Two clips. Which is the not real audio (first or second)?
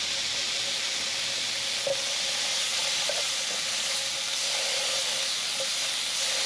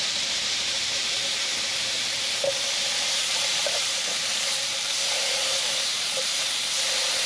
second